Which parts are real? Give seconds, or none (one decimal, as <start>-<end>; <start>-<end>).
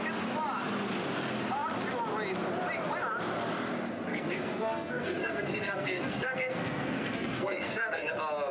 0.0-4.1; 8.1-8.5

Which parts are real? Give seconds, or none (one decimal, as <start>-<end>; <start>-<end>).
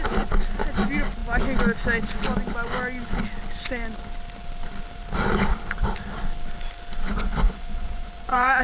0.0-7.1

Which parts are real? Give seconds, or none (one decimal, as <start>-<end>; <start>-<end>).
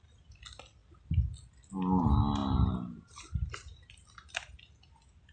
0.0-5.3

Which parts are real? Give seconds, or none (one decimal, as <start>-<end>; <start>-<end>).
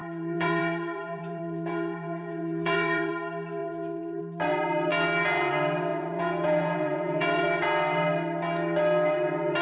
3.1-3.6; 4.2-5.9; 7.6-9.6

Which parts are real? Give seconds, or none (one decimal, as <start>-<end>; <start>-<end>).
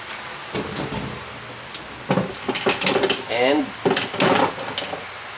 0.0-0.4; 3.6-5.4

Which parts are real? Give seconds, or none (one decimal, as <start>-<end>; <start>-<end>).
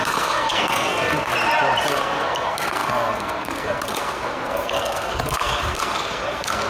1.3-1.9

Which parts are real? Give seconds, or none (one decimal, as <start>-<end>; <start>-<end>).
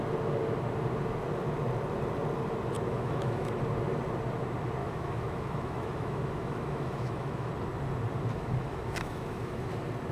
0.0-2.9; 3.5-4.8; 7.5-8.3; 9.7-10.1